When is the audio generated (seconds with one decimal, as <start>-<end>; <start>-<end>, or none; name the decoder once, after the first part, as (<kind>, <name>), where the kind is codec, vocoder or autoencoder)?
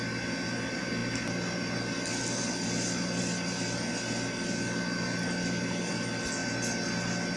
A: none